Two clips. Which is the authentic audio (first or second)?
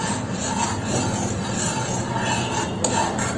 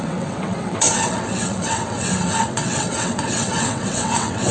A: first